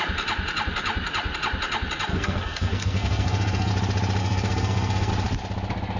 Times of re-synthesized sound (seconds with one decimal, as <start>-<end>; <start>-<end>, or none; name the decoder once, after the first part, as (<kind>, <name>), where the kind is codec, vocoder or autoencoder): 2.1-3.7 (codec, SNAC); 4.2-5.1